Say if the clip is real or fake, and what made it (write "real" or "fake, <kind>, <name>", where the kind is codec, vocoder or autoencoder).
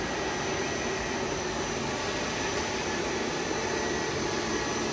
real